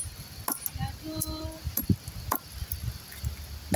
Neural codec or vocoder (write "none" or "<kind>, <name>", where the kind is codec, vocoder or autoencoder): none